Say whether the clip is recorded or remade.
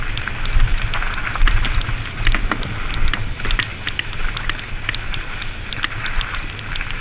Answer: recorded